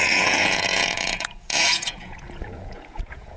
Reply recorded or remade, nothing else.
remade